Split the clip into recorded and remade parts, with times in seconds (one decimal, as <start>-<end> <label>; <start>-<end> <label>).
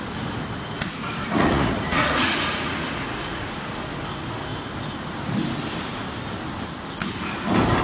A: 0.0-1.2 recorded; 1.2-3.5 remade; 3.5-7.8 recorded